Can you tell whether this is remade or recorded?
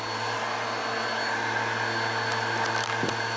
recorded